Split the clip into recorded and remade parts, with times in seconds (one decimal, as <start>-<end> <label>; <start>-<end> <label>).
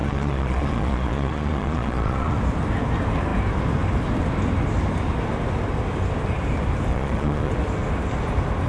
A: 0.0-2.4 remade; 2.4-6.9 recorded; 6.9-7.5 remade; 7.5-8.7 recorded